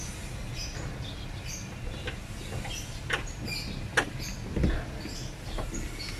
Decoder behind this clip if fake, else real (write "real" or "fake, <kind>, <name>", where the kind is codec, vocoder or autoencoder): real